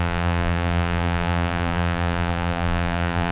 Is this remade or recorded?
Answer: remade